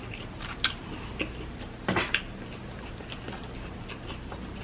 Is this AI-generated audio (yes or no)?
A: no